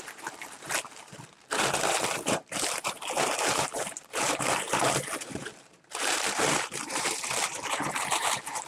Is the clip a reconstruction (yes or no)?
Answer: yes